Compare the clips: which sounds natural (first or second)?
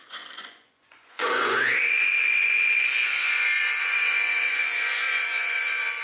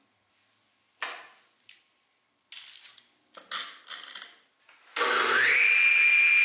second